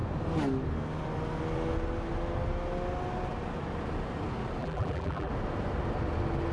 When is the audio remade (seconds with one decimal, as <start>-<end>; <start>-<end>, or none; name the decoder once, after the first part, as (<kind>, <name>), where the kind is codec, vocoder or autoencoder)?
4.6-5.3 (vocoder, BigVGAN v2)